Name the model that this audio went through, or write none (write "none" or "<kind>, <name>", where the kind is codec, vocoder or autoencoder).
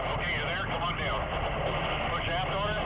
none